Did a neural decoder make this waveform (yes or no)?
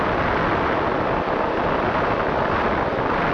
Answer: no